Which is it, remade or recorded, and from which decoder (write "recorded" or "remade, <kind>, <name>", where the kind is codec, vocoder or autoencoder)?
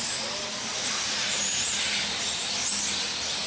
recorded